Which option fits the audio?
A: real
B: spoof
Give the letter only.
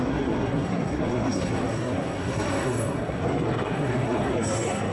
B